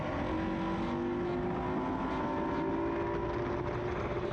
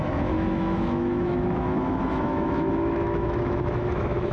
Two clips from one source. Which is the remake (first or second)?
second